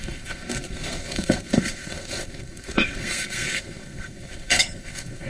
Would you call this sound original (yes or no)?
no